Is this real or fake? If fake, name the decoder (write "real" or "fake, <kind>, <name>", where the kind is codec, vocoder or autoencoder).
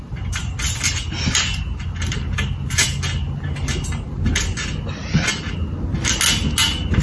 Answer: real